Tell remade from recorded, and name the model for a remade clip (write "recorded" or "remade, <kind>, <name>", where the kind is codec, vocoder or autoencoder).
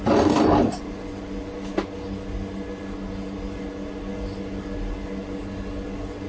recorded